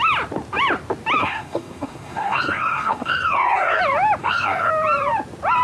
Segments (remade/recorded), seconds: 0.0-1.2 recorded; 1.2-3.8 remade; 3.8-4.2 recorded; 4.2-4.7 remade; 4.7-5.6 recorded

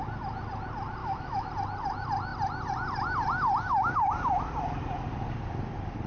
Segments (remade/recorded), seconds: 0.0-1.0 recorded; 1.0-1.5 remade; 1.5-6.1 recorded

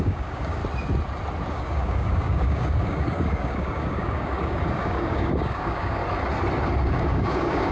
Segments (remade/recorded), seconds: 0.0-0.6 remade; 0.6-1.5 recorded; 1.5-6.0 remade; 6.0-6.8 recorded; 6.8-7.7 remade

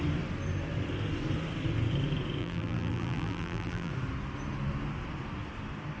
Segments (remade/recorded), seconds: 0.0-2.4 recorded; 2.4-3.9 remade; 3.9-6.0 recorded